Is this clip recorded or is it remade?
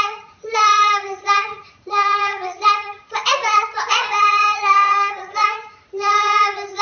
remade